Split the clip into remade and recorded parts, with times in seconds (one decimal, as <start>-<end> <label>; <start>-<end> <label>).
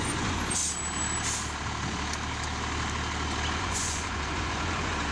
0.0-0.6 remade; 0.6-3.6 recorded; 3.6-5.1 remade